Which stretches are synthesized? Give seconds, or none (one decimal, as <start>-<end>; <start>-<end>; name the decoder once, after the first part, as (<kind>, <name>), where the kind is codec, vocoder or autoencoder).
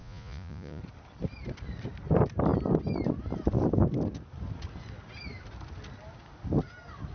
0.0-0.8 (vocoder, Vocos)